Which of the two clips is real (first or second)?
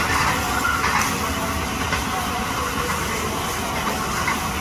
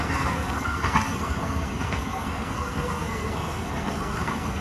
first